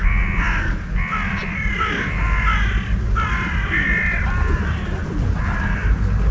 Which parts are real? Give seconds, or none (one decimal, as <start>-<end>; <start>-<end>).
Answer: 0.0-6.3